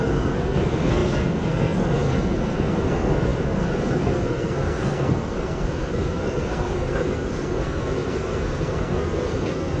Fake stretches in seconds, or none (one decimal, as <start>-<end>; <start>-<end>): 0.0-9.8